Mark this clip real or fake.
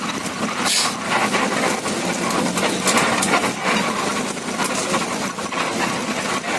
real